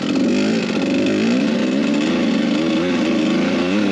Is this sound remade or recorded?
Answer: recorded